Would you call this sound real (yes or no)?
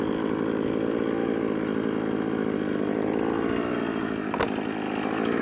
yes